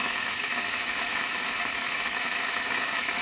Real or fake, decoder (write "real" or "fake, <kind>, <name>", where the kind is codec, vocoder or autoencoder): fake, autoencoder, DAC-VAE